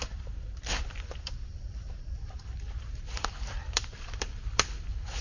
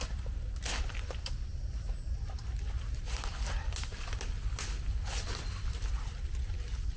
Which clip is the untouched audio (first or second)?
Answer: second